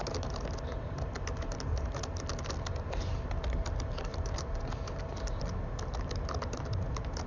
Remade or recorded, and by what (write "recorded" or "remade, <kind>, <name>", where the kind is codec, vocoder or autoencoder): recorded